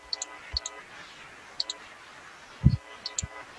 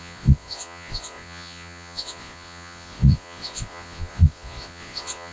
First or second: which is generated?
second